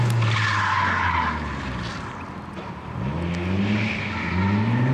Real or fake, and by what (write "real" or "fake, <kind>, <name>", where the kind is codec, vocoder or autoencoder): real